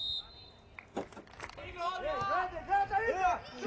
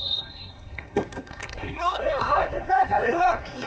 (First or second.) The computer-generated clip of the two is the second